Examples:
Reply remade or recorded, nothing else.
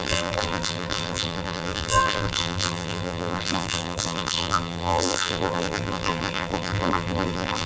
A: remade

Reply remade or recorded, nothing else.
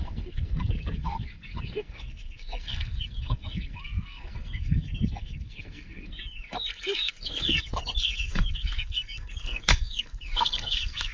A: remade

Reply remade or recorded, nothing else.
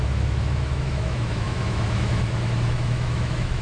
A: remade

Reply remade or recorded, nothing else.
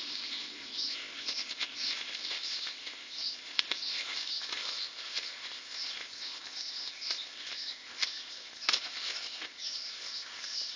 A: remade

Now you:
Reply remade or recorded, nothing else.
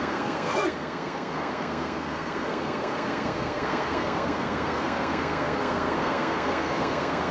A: remade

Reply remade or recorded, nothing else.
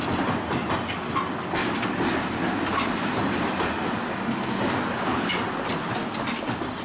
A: recorded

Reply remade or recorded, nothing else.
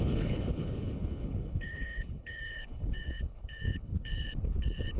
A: remade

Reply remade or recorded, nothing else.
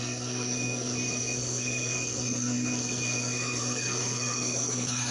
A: remade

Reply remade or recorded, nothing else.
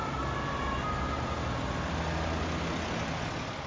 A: recorded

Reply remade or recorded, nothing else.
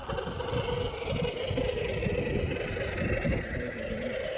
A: recorded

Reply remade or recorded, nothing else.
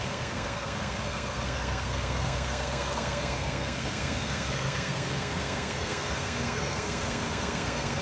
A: remade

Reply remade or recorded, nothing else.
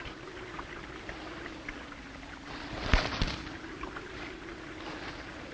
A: recorded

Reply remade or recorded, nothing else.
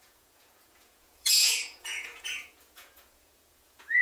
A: remade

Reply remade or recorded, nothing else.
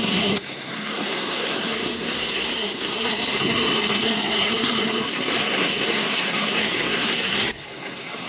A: remade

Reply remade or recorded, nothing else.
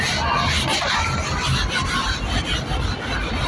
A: recorded